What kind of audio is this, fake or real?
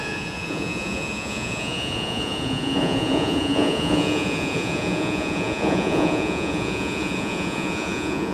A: fake